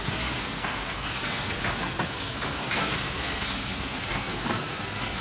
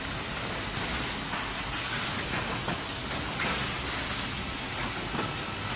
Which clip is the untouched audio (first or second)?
second